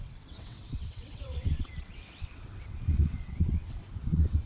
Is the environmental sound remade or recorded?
remade